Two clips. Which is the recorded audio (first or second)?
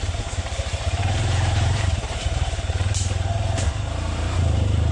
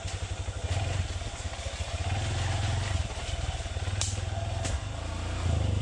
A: second